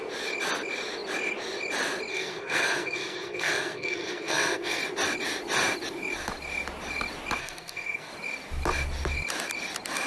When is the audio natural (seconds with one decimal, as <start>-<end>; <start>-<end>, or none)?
0.0-2.1; 4.8-7.4; 8.1-10.1